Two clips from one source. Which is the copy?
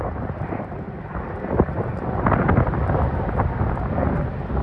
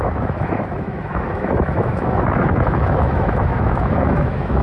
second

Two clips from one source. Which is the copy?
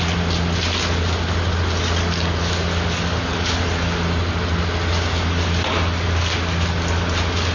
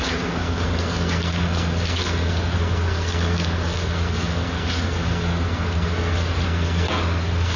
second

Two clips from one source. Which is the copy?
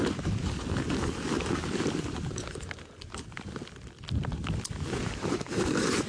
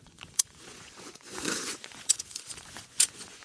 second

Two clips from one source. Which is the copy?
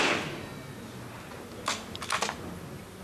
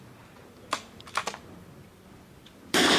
second